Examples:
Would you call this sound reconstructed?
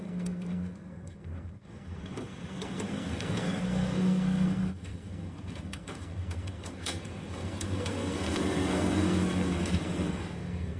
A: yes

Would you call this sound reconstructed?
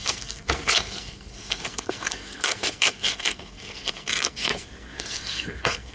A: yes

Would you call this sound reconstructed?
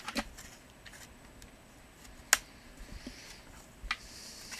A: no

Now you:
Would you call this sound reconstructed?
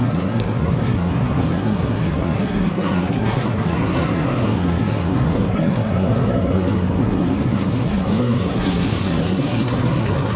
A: yes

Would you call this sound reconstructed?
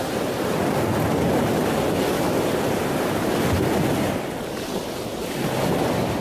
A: no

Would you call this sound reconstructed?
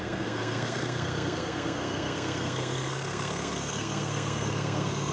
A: yes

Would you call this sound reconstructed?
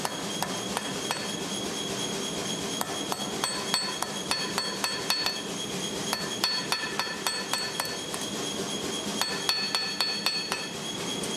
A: no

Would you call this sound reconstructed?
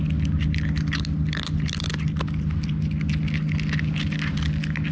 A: no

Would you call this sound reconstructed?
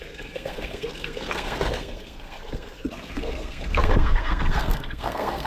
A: yes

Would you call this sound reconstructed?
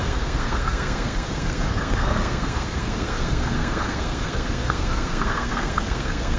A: yes